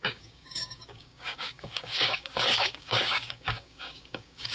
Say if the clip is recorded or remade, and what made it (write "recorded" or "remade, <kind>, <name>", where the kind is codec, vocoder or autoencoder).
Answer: remade, codec, DAC